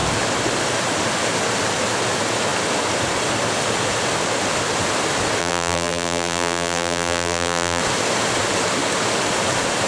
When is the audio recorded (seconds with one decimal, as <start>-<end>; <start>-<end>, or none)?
0.0-5.4; 7.8-9.9